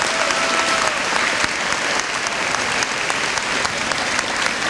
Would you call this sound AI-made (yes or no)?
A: no